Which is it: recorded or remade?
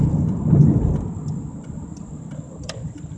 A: remade